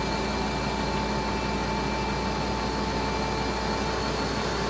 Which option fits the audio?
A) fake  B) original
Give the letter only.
B